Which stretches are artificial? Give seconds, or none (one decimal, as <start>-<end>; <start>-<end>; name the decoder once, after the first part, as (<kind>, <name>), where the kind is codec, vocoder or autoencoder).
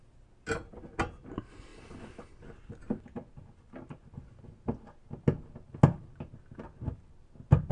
none